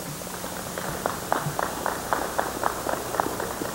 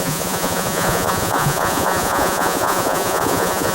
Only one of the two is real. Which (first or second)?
first